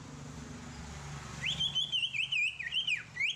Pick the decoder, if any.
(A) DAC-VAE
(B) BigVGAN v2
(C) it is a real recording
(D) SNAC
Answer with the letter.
C